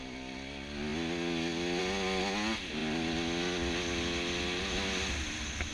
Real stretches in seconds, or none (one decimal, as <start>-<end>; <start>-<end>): 0.0-5.7